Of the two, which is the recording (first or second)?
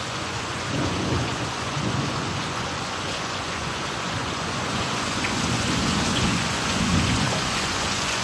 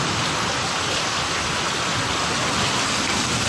second